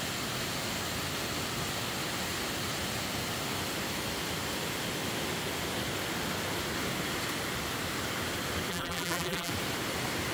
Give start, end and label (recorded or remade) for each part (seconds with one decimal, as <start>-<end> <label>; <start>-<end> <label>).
0.0-8.7 recorded; 8.7-9.5 remade; 9.5-10.3 recorded